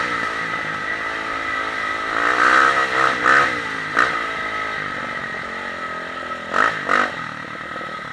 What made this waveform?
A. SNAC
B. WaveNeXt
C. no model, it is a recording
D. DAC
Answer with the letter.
C